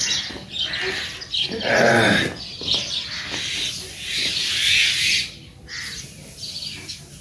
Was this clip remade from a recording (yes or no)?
no